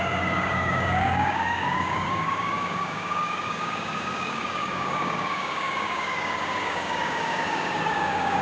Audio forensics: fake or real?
fake